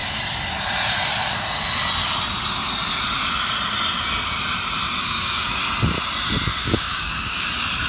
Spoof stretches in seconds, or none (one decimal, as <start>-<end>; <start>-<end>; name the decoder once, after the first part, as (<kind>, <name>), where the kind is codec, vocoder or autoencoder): 5.0-5.6 (codec, DAC); 6.5-7.5